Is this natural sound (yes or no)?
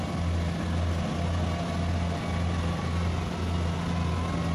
yes